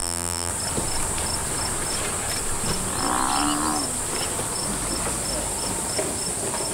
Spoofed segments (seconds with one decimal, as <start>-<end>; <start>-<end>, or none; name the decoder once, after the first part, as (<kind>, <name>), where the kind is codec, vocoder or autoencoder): 0.0-0.5 (vocoder, BigVGAN v2)